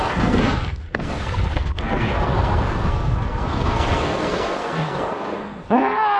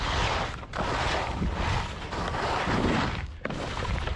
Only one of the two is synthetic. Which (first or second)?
first